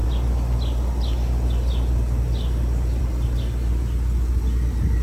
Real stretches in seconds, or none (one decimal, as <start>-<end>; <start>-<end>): 0.0-5.0